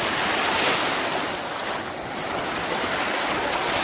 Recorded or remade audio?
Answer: recorded